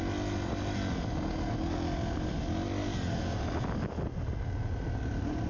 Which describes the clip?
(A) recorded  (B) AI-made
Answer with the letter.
A